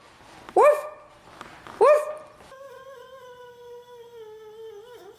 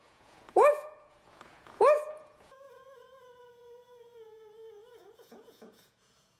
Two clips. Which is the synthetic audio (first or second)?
second